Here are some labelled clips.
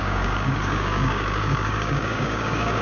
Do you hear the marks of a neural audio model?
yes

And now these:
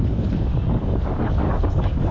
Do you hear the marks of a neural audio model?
yes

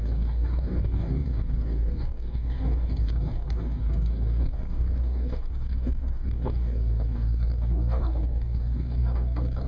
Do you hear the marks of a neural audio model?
yes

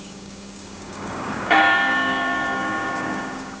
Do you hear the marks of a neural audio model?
yes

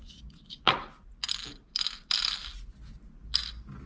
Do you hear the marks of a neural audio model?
no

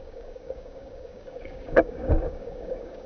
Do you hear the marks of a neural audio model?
yes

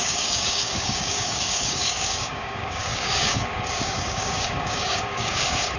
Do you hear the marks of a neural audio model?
yes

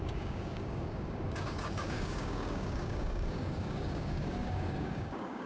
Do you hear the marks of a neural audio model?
yes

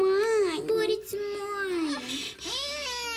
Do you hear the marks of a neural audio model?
no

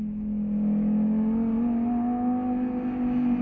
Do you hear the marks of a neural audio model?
no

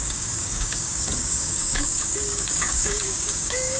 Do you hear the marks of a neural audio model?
yes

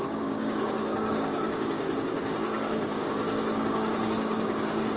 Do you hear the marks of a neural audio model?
yes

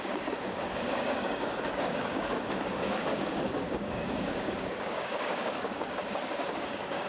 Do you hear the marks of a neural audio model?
yes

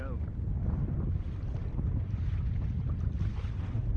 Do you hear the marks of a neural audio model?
no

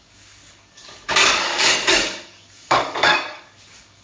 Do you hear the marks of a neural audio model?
yes